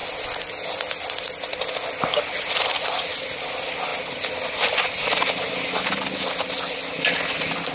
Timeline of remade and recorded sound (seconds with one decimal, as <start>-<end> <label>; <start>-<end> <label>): 0.0-7.7 recorded